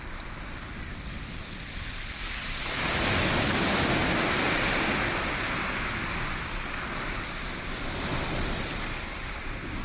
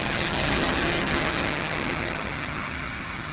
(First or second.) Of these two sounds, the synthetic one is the second